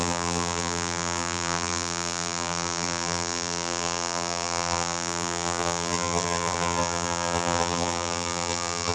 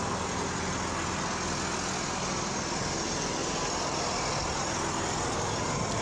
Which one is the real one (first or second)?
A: second